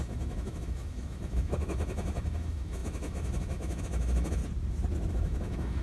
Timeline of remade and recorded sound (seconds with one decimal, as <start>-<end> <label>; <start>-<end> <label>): 0.0-4.4 remade; 4.4-5.1 recorded; 5.1-5.8 remade